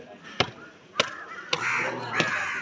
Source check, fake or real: real